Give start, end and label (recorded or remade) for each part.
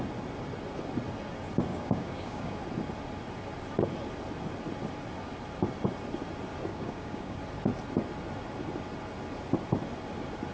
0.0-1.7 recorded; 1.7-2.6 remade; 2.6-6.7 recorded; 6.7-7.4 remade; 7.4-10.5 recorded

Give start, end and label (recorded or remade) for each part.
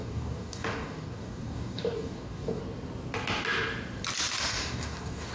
0.0-2.6 remade; 2.6-4.5 recorded; 4.5-5.3 remade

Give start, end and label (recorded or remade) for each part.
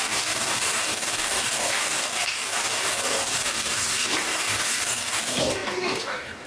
0.0-6.5 remade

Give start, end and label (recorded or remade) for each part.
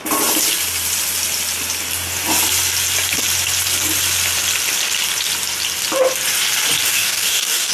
0.0-6.9 recorded; 6.9-7.7 remade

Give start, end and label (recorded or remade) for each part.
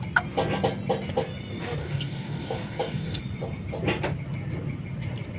0.0-1.8 recorded; 1.8-3.2 remade; 3.2-5.4 recorded